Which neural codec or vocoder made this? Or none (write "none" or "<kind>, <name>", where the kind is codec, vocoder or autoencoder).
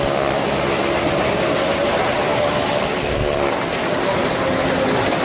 none